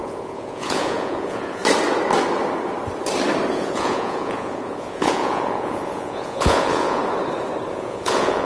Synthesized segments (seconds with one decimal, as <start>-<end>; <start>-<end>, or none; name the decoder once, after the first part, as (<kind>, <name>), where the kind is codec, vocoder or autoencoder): 0.0-1.6 (vocoder, Vocos); 3.5-7.0; 7.7-8.5